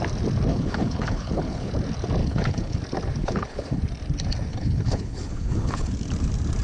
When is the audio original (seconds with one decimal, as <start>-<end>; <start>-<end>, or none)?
0.0-0.5; 1.7-2.2; 2.8-3.2; 3.8-4.5; 5.9-6.6

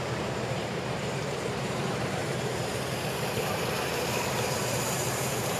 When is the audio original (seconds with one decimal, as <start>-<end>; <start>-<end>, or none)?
none